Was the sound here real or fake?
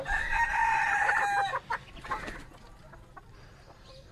real